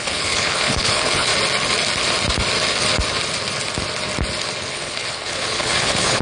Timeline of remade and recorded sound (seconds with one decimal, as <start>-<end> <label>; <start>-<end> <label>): 0.0-1.3 remade; 1.3-4.7 recorded; 4.7-6.2 remade